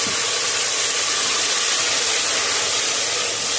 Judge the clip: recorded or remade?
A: recorded